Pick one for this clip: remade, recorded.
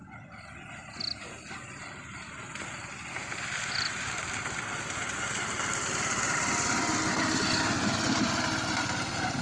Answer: recorded